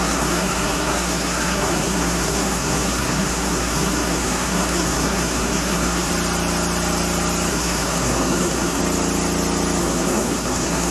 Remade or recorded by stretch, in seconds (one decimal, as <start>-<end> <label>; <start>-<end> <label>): 0.0-6.1 remade; 6.1-7.5 recorded; 7.5-8.8 remade; 8.8-9.8 recorded; 9.8-10.9 remade